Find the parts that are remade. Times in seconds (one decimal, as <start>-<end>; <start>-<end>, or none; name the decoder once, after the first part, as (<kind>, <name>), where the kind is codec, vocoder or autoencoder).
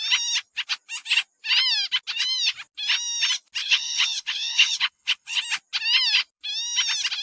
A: 3.6-5.4 (codec, HILCodec)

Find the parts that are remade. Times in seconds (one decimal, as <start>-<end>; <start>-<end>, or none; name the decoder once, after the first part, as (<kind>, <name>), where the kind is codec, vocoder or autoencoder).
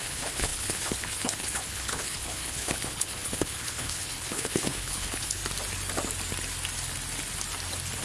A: 0.0-5.4 (codec, HILCodec)